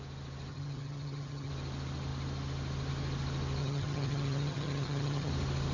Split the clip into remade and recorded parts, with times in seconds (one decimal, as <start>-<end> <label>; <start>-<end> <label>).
0.0-0.5 recorded; 0.5-1.5 remade; 1.5-3.6 recorded; 3.6-5.3 remade; 5.3-5.7 recorded